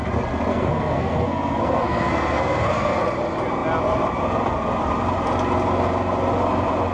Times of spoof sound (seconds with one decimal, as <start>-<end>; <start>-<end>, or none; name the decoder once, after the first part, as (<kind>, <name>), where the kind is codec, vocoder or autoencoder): 0.5-3.0 (codec, SNAC)